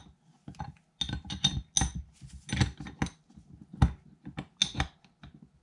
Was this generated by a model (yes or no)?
no